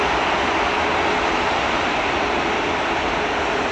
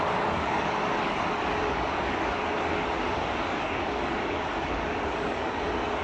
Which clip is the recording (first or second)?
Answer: first